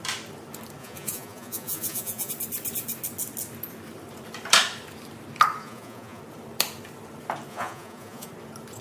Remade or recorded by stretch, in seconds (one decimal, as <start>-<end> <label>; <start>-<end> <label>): 0.0-0.8 recorded; 0.8-2.3 remade; 2.3-5.6 recorded; 5.6-6.2 remade; 6.2-7.5 recorded; 7.5-8.3 remade; 8.3-8.8 recorded